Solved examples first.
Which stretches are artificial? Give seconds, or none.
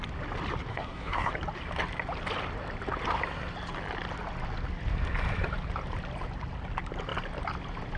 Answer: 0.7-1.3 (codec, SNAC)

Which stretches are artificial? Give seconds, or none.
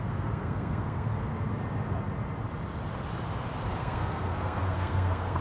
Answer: 0.0-1.6 (codec, SNAC); 3.8-5.4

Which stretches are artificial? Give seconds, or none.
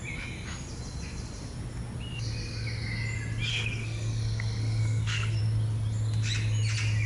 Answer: 3.5-5.4 (codec, SNAC)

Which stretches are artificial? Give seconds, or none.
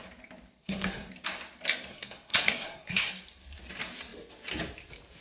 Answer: 0.6-1.1 (codec, SNAC); 1.9-3.1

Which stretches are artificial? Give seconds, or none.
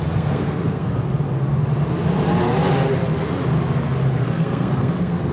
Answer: 0.0-0.9 (codec, SNAC); 4.1-5.3